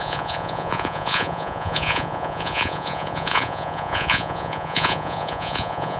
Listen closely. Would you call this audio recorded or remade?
remade